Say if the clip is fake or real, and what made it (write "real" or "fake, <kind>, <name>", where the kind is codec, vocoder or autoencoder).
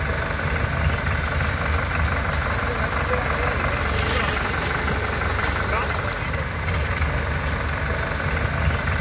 real